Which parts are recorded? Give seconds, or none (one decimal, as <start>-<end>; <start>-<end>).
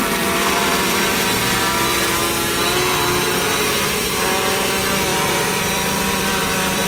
2.2-3.7